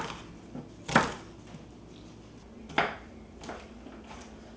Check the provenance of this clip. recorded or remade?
recorded